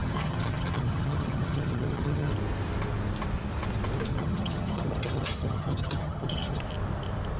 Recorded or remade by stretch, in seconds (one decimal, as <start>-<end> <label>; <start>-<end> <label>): 0.0-2.3 remade; 2.3-4.1 recorded; 4.1-6.6 remade; 6.6-7.4 recorded

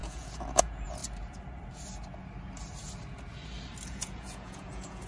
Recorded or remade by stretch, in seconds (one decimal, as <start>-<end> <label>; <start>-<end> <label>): 0.0-1.0 remade; 1.0-3.9 recorded; 3.9-5.1 remade

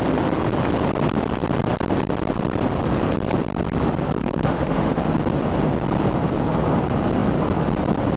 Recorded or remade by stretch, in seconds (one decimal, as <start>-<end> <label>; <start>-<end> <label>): 0.0-4.2 recorded; 4.2-5.0 remade; 5.0-8.2 recorded

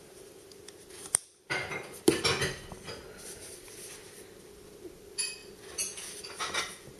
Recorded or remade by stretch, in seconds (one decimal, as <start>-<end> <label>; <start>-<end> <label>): 0.0-7.0 recorded